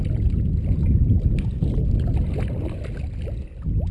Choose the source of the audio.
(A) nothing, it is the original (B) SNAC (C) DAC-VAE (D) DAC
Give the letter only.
A